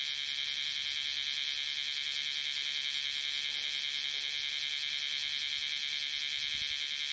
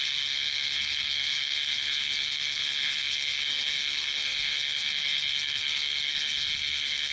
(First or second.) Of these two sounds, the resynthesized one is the second